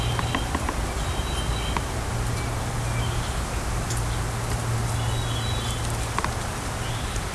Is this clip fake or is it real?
real